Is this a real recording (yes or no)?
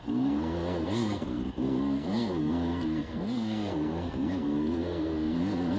no